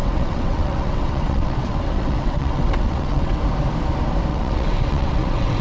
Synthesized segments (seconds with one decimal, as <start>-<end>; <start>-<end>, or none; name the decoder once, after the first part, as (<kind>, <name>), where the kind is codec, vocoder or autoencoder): 0.0-3.4 (vocoder, WaveNeXt); 4.3-5.6